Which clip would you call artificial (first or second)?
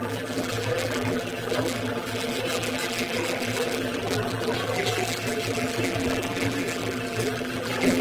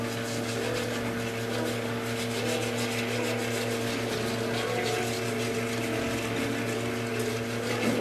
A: first